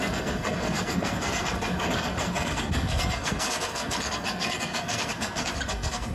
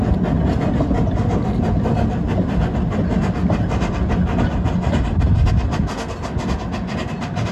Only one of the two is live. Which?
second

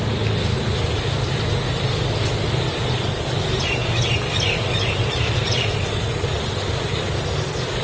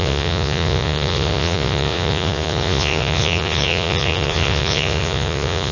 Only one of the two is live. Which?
first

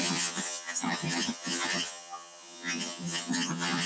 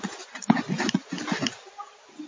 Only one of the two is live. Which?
second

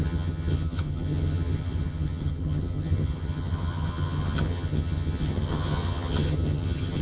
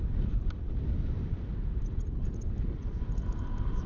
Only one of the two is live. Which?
second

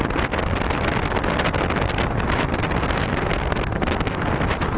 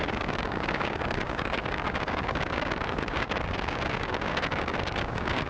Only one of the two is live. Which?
first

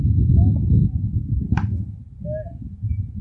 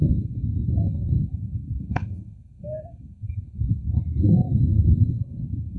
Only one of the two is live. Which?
first